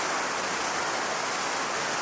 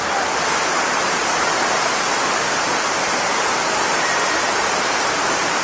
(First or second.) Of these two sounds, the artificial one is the second